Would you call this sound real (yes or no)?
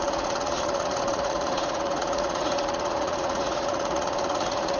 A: no